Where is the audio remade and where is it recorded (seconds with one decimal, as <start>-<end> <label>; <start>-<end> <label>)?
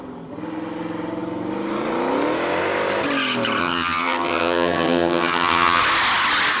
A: 0.0-3.6 recorded; 3.6-5.8 remade; 5.8-6.6 recorded